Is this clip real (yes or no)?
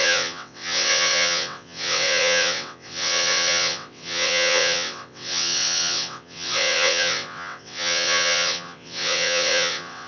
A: no